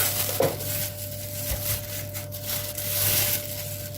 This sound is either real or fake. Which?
real